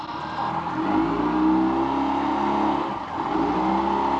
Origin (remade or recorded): recorded